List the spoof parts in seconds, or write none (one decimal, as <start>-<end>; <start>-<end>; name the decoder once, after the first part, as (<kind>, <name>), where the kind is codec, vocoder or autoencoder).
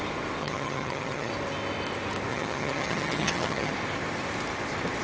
0.4-1.3 (vocoder, HiFi-GAN); 2.3-3.7